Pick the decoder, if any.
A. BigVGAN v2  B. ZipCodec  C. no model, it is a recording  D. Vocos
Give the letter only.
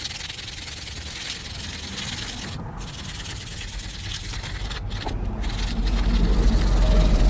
C